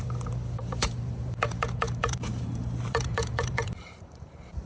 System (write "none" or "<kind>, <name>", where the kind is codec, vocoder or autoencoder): vocoder, BigVGAN v2